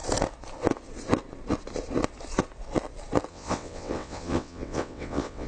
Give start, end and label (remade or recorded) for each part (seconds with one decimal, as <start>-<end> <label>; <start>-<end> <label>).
0.0-3.3 recorded; 3.3-5.5 remade

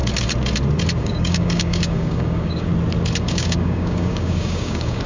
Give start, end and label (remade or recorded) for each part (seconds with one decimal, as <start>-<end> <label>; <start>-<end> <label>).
0.0-1.0 recorded; 1.0-2.7 remade; 2.7-3.2 recorded; 3.2-5.1 remade

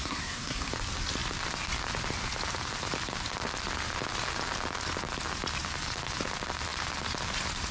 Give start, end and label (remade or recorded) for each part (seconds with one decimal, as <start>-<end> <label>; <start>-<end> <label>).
0.0-0.7 remade; 0.7-7.7 recorded

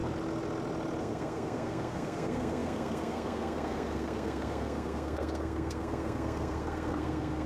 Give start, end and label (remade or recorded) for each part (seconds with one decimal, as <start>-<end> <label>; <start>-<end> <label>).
0.0-1.0 recorded; 1.0-7.5 remade

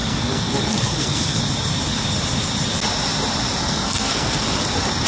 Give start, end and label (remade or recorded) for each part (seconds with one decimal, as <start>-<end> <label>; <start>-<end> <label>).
0.0-1.4 remade; 1.4-3.6 recorded; 3.6-4.6 remade; 4.6-5.1 recorded

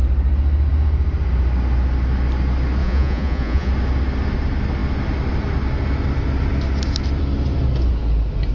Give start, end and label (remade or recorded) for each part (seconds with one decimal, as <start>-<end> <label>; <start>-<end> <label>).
0.0-2.8 recorded; 2.8-3.7 remade; 3.7-8.5 recorded

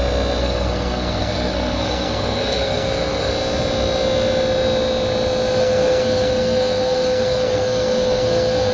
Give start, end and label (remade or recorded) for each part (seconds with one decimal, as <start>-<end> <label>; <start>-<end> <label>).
0.0-0.4 recorded; 0.4-3.3 remade; 3.3-5.6 recorded; 5.6-8.7 remade

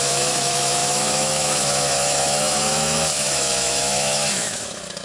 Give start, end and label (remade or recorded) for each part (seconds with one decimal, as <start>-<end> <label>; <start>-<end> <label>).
0.0-5.0 remade